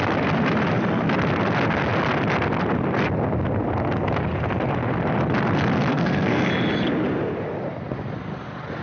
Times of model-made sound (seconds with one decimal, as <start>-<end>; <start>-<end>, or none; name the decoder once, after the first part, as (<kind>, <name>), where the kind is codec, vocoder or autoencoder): 5.9-6.5 (codec, SNAC)